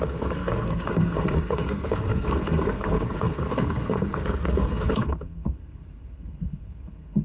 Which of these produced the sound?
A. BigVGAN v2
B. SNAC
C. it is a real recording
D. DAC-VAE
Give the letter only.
B